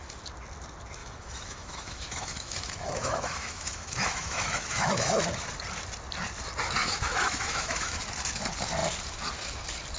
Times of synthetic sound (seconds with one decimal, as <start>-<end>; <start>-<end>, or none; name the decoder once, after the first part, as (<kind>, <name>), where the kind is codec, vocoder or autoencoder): 1.0-5.2 (autoencoder, DAC-VAE); 6.8-8.0